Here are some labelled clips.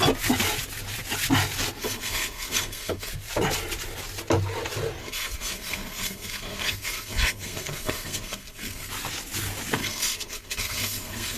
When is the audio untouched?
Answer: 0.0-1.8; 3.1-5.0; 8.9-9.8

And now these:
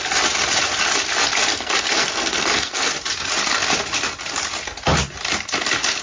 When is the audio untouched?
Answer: 0.0-1.5; 2.9-6.0

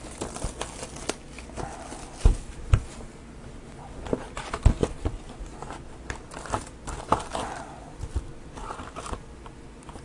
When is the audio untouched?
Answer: 0.0-10.0

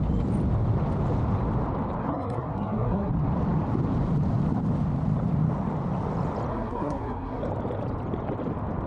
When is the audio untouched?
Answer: 0.0-2.0; 3.1-6.5; 7.4-8.9

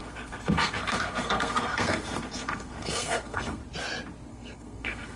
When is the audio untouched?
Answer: 3.6-4.3

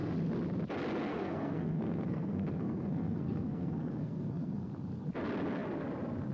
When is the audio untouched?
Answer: 0.0-1.1; 4.7-6.3